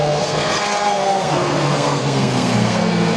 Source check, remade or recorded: remade